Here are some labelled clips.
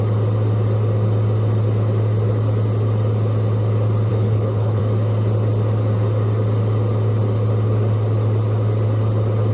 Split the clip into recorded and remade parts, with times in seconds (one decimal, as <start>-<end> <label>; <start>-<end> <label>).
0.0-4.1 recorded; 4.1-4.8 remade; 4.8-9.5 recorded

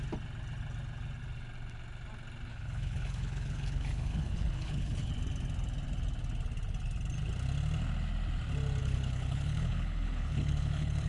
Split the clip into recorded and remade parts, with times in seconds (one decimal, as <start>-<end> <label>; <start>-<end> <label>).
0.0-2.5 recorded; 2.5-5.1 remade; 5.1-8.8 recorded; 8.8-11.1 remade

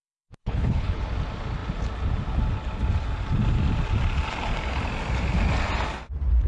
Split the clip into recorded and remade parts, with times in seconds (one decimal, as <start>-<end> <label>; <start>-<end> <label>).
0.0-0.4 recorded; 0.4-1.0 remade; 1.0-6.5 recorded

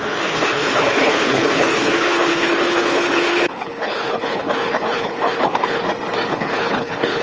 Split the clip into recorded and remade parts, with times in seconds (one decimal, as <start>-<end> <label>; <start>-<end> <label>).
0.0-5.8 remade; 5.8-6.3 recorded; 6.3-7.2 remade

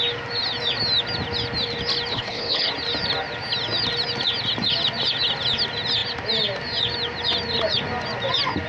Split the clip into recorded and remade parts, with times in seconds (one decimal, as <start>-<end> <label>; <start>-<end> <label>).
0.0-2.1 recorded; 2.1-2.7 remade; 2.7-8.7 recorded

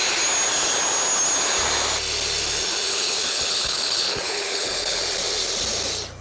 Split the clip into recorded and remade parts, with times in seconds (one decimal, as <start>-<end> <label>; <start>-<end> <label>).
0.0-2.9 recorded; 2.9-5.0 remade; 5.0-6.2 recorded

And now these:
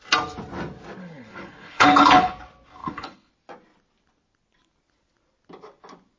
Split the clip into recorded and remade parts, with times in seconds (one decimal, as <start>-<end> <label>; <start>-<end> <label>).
0.0-1.0 recorded; 1.0-2.3 remade; 2.3-2.8 recorded; 2.8-3.3 remade; 3.3-6.2 recorded